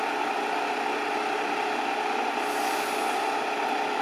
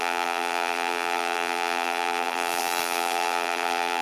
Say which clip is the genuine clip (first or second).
first